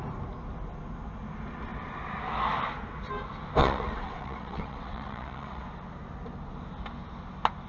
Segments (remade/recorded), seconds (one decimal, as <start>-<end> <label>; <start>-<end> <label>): 0.0-3.6 recorded; 3.6-5.6 remade; 5.6-7.7 recorded